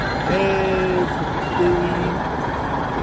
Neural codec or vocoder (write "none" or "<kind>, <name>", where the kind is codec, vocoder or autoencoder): none